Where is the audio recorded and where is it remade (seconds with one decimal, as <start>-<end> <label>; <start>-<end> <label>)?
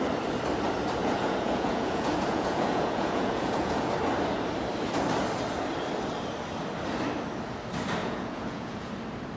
0.0-1.0 recorded; 1.0-3.9 remade; 3.9-8.0 recorded; 8.0-8.9 remade; 8.9-9.4 recorded